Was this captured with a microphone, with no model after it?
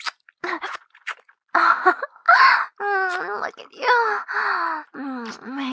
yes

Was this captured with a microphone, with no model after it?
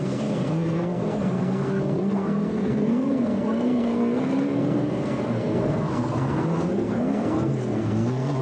no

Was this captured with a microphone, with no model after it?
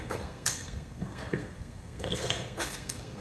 no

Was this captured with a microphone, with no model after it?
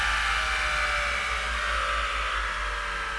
yes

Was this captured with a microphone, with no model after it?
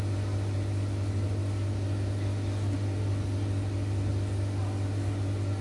yes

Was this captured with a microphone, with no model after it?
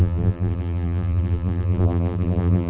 no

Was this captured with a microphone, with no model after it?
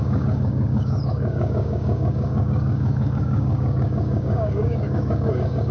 no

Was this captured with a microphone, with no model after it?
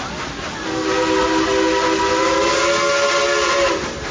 yes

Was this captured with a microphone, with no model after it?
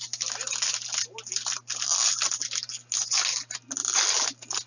yes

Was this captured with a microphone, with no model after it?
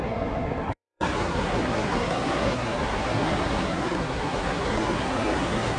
no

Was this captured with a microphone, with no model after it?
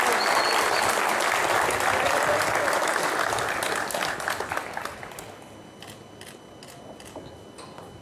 yes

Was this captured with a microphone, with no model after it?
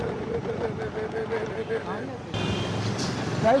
yes